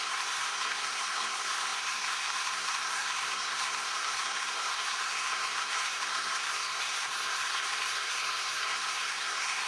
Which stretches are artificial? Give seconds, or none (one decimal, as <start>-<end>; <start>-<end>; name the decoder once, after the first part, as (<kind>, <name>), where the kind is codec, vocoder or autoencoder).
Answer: 0.0-9.7 (codec, SNAC)